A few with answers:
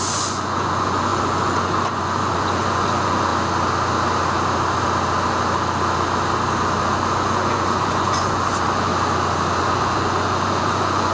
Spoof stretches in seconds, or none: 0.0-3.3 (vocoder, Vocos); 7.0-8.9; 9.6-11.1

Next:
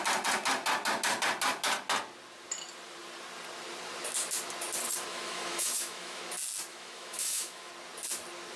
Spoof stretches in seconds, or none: 5.1-6.2 (autoencoder, DAC-VAE); 6.7-7.7

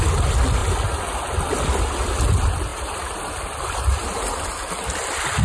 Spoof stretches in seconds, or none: 2.7-4.7 (vocoder, BigVGAN v2)

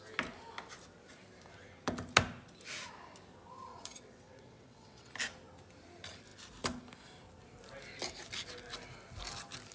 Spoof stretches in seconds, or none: 3.7-5.1 (vocoder, WaveNeXt)

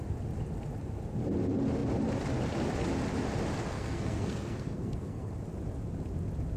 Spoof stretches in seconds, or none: 3.7-5.3 (codec, SNAC)

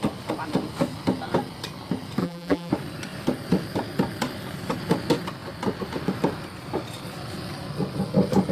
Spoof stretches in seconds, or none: 2.2-2.7 (vocoder, BigVGAN v2)

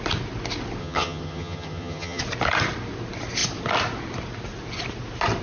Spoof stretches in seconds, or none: 0.8-2.2 (vocoder, HiFi-GAN)